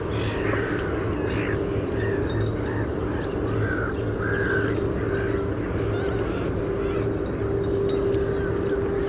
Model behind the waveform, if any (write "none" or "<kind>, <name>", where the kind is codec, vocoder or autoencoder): none